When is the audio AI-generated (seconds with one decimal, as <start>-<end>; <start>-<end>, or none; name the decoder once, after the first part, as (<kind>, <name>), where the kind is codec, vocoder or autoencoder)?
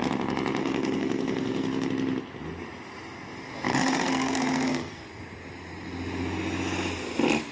0.6-1.9 (codec, SNAC); 3.7-5.0